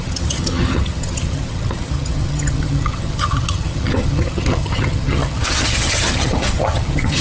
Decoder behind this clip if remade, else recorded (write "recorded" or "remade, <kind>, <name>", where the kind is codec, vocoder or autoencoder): remade, vocoder, HiFi-GAN